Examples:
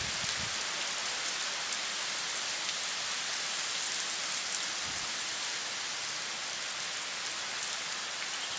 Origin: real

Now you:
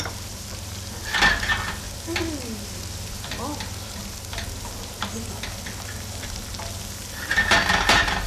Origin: real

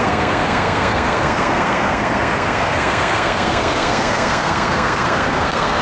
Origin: fake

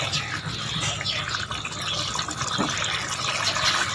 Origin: real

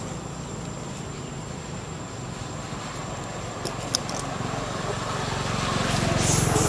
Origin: real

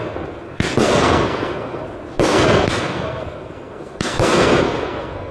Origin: fake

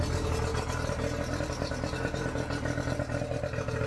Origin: real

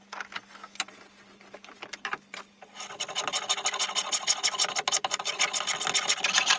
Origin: real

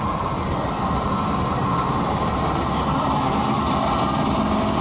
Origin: real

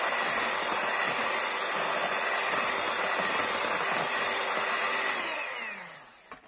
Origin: real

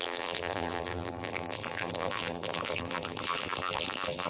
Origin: fake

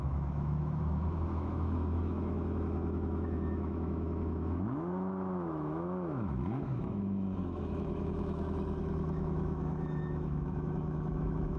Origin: fake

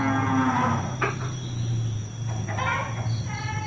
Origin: real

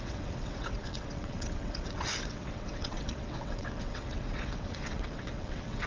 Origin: fake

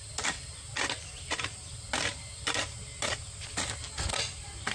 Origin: real